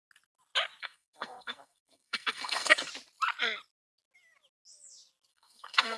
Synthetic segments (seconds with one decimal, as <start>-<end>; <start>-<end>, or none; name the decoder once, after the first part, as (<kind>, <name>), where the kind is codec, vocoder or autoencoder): 0.8-2.9 (codec, SNAC); 5.3-6.0